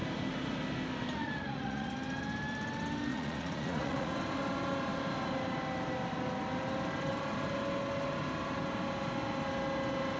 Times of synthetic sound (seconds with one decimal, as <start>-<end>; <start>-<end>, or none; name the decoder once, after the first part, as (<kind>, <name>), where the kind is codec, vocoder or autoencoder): 1.2-1.9 (vocoder, Vocos); 3.1-4.1